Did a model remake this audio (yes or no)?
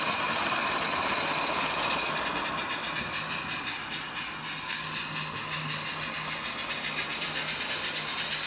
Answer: no